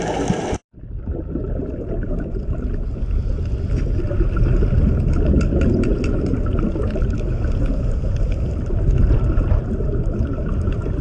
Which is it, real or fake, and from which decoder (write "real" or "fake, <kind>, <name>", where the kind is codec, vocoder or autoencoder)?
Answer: real